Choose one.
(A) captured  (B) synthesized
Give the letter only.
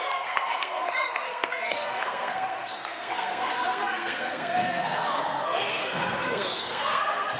B